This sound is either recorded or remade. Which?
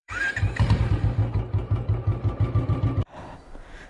remade